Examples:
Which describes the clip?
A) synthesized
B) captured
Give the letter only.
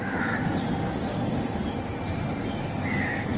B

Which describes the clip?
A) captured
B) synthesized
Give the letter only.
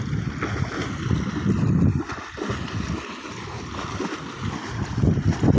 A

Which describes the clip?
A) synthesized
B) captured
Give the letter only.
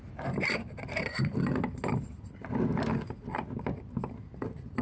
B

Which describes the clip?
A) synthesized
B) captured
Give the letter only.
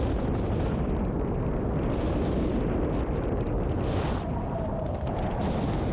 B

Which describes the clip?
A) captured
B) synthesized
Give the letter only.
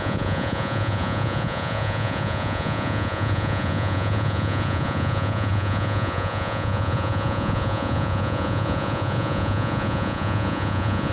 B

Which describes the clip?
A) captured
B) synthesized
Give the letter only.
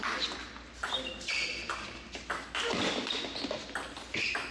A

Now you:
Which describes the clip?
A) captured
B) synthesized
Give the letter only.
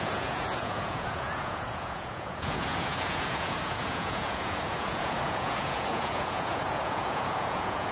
B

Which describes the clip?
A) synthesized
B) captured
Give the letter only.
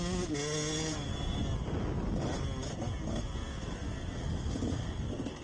B